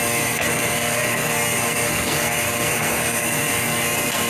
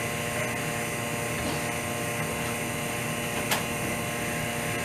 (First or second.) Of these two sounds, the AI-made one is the first